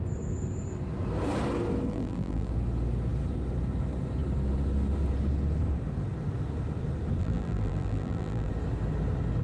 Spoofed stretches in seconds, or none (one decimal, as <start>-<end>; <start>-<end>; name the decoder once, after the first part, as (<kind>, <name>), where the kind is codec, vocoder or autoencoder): 1.9-2.5 (vocoder, BigVGAN v2); 7.2-8.5